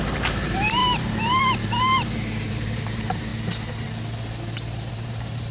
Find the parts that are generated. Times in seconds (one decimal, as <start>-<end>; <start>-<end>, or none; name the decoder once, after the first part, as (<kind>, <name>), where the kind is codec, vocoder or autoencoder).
0.0-3.3 (vocoder, BigVGAN v2); 4.9-5.5